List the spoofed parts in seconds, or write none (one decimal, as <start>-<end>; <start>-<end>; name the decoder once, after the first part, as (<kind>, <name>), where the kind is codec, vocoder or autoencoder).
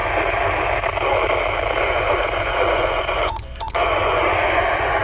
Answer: 1.8-5.0 (vocoder, Vocos)